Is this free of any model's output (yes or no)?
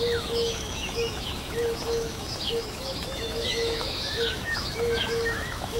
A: no